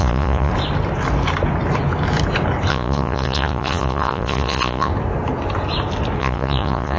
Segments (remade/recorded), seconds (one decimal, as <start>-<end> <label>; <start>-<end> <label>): 0.0-0.5 remade; 0.5-2.7 recorded; 2.7-4.9 remade; 4.9-6.2 recorded; 6.2-7.0 remade